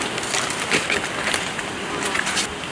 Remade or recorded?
recorded